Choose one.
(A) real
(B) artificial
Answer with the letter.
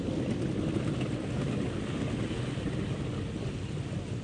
A